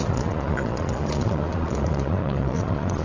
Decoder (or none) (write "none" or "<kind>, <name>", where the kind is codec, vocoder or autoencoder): vocoder, Vocos